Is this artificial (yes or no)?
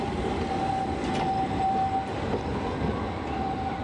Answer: no